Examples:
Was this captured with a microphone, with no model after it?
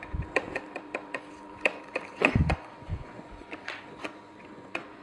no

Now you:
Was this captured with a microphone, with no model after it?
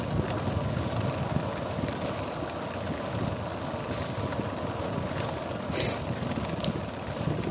yes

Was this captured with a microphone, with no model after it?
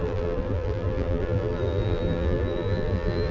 no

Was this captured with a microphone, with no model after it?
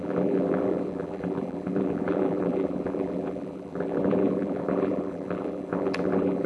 no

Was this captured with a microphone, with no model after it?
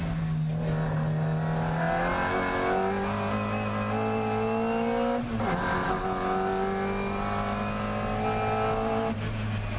yes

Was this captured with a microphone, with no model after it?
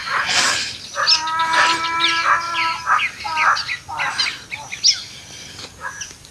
yes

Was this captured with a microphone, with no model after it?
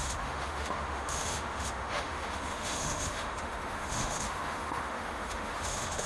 no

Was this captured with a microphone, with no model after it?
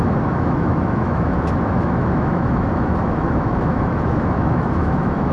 no